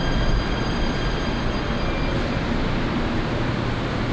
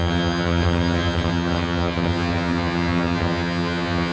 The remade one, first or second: second